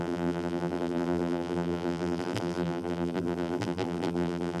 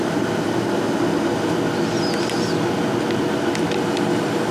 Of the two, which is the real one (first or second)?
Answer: second